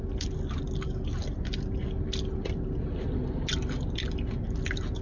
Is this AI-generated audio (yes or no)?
no